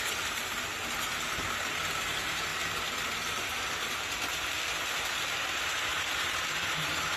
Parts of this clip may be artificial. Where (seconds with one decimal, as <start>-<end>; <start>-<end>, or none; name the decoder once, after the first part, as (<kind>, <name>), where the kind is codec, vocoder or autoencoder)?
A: 0.0-2.5 (vocoder, BigVGAN v2); 6.2-7.2